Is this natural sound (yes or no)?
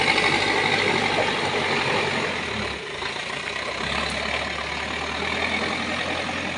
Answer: yes